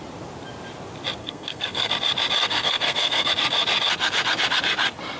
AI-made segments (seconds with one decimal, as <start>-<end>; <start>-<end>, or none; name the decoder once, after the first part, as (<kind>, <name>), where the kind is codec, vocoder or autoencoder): 1.2-1.9 (codec, SNAC); 2.4-3.3

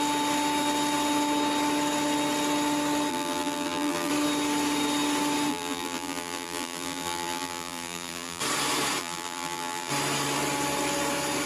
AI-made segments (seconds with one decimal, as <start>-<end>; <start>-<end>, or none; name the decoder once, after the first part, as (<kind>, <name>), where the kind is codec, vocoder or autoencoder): 3.1-4.1 (vocoder, BigVGAN v2); 5.5-8.4; 9.0-9.9